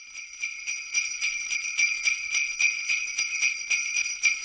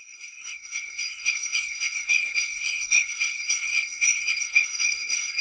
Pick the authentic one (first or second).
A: first